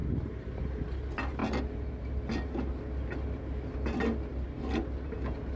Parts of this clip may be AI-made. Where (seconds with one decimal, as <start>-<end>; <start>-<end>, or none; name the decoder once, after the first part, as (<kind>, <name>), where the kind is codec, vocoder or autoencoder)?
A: 0.0-0.6 (vocoder, BigVGAN v2)